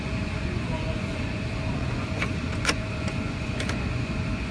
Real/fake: fake